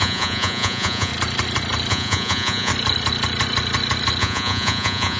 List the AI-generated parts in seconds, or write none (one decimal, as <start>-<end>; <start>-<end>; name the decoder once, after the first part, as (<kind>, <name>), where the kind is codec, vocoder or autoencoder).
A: 0.0-1.1 (vocoder, Vocos); 1.9-2.7; 4.2-5.2

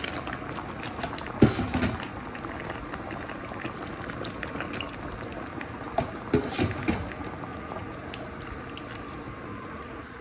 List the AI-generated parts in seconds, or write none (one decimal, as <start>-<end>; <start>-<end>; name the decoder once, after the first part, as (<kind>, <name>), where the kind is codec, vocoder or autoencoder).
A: 7.5-8.1 (vocoder, Vocos); 9.5-10.2

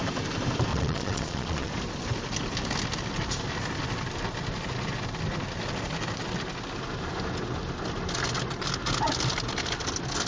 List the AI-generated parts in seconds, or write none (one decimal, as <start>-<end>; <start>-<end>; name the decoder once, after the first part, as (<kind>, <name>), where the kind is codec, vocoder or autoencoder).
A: 0.7-1.7 (vocoder, Vocos)

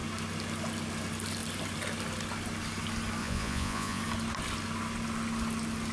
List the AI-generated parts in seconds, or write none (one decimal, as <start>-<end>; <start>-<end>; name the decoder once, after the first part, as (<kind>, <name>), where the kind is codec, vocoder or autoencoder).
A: 3.2-4.0 (vocoder, Vocos)

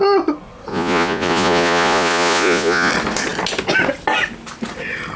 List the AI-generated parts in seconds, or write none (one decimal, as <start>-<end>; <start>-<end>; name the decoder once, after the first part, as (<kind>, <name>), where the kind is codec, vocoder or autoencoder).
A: 0.7-2.9 (vocoder, Vocos)

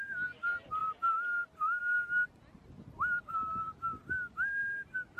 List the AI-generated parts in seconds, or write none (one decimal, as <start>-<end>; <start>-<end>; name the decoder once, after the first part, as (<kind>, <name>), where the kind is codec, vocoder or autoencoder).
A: none